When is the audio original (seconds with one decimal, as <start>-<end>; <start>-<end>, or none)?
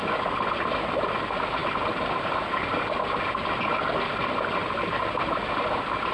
0.0-6.1